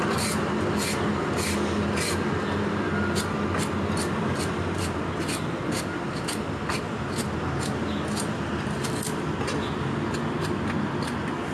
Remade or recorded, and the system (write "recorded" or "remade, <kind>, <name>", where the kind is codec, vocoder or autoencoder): recorded